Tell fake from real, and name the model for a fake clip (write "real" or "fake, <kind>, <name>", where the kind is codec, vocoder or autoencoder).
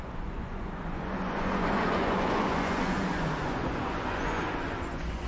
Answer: fake, vocoder, Vocos